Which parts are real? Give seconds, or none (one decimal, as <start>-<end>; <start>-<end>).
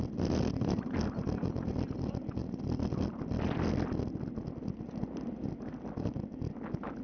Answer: 0.0-7.0